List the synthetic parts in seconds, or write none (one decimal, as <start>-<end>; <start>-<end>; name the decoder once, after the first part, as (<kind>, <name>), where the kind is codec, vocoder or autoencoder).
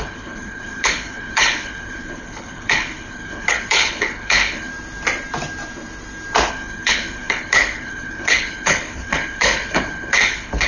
0.0-4.7 (codec, HILCodec); 6.5-10.7